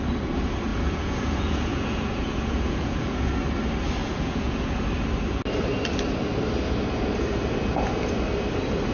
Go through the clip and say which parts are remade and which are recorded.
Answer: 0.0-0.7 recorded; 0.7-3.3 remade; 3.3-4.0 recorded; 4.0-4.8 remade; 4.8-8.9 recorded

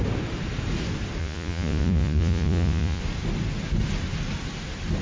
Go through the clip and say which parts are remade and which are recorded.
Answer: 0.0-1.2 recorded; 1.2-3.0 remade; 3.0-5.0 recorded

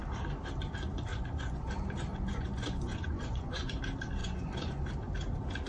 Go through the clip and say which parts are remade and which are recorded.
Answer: 0.0-1.1 recorded; 1.1-1.7 remade; 1.7-2.1 recorded; 2.1-3.8 remade; 3.8-4.2 recorded; 4.2-4.9 remade; 4.9-5.7 recorded

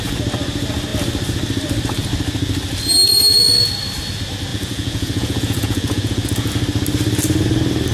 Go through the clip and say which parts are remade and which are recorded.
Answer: 0.0-4.5 recorded; 4.5-6.5 remade; 6.5-7.9 recorded